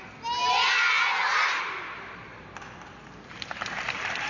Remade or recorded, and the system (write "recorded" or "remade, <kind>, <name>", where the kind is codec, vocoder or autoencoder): recorded